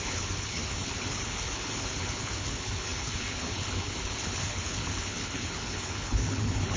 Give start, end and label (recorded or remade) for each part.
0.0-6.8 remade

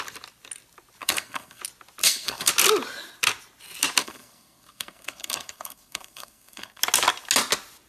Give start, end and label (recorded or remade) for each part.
0.0-1.0 recorded; 1.0-1.6 remade; 1.6-2.0 recorded; 2.0-2.5 remade; 2.5-4.0 recorded; 4.0-6.8 remade; 6.8-7.9 recorded

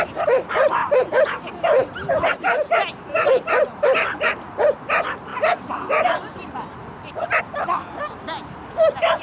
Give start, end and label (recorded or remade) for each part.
0.0-9.2 recorded

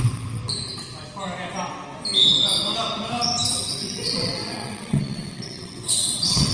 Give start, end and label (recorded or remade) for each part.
0.0-0.4 remade; 0.4-3.5 recorded; 3.5-6.5 remade

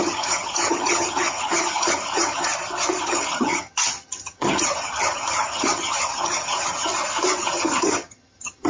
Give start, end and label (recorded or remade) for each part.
0.0-2.5 remade; 2.5-3.0 recorded; 3.0-6.9 remade; 6.9-7.4 recorded; 7.4-8.7 remade